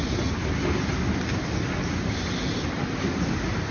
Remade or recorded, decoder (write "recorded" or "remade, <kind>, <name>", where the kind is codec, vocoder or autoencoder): recorded